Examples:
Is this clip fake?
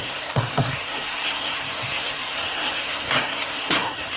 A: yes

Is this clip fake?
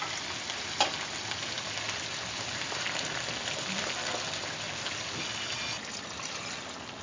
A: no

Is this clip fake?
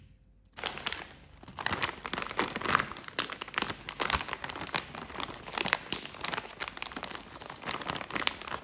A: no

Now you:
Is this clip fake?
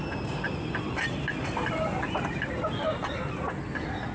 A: no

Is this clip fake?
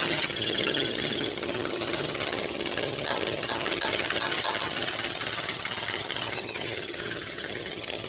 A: yes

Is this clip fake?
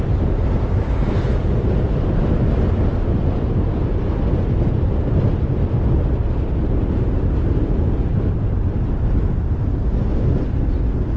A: no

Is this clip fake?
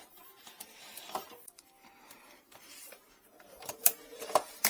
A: yes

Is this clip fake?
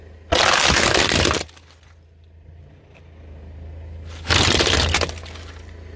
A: no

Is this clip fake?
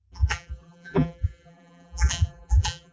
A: yes